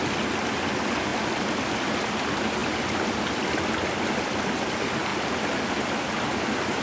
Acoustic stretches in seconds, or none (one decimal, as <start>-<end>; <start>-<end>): 0.0-6.8